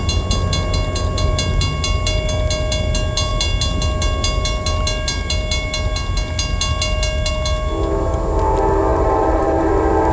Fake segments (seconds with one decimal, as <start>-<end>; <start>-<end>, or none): 8.9-9.7